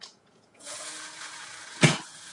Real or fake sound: fake